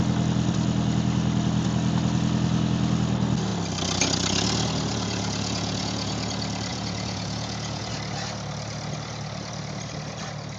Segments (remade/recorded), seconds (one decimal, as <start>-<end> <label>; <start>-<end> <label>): 0.0-4.9 recorded; 4.9-6.2 remade; 6.2-6.7 recorded; 6.7-7.9 remade; 7.9-10.6 recorded